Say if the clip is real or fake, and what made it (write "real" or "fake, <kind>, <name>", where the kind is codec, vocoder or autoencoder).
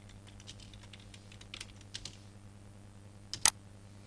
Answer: real